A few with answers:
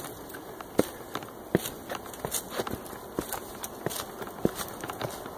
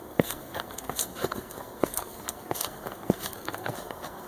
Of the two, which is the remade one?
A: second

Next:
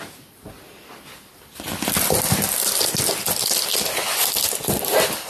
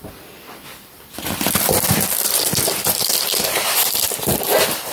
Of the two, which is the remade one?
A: second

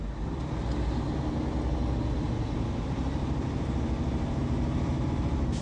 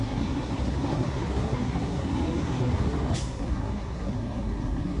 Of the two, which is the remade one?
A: second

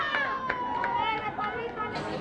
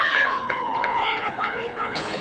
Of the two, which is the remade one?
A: second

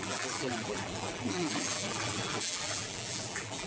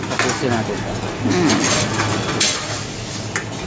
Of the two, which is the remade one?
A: first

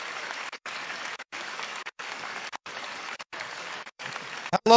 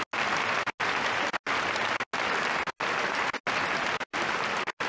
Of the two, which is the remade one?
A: first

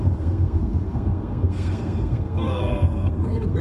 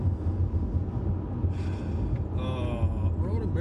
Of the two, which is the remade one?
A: first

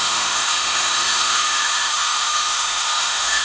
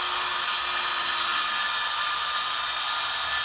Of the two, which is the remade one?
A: first